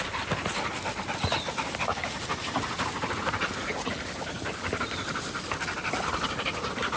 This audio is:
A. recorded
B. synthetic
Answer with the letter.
A